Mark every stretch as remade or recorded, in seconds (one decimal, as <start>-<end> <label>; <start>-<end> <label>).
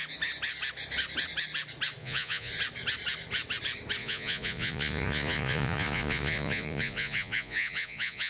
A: 0.0-2.0 recorded; 2.0-2.5 remade; 2.5-4.0 recorded; 4.0-8.3 remade